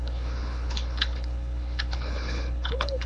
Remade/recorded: remade